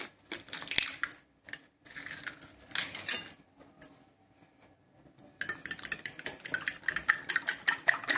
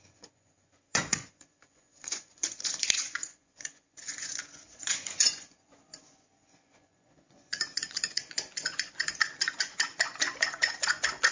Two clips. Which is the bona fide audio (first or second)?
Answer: first